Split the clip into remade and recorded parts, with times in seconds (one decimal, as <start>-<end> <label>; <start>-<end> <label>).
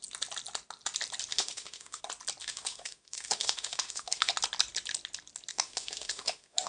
0.0-1.3 recorded; 1.3-2.0 remade; 2.0-2.4 recorded; 2.4-4.3 remade; 4.3-5.5 recorded; 5.5-6.7 remade